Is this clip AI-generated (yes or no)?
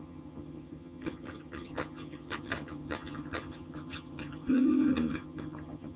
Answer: yes